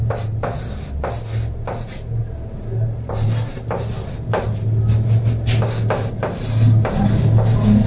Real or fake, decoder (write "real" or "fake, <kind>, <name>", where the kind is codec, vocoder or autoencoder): real